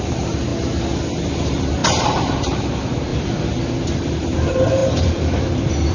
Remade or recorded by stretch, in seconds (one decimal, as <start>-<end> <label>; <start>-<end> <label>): 0.0-0.5 remade; 0.5-1.2 recorded; 1.2-1.8 remade; 1.8-2.4 recorded; 2.4-3.1 remade; 3.1-4.2 recorded; 4.2-5.9 remade